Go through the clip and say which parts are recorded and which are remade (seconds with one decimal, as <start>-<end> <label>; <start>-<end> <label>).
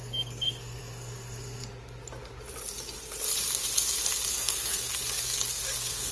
0.0-1.7 remade; 1.7-4.3 recorded; 4.3-4.9 remade; 4.9-5.5 recorded; 5.5-6.1 remade